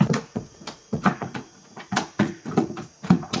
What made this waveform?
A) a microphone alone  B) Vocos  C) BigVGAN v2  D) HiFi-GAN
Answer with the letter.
B